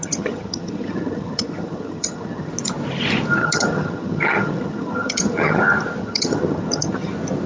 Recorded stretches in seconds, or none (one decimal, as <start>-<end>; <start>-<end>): 2.5-3.4; 5.6-6.0; 7.1-7.5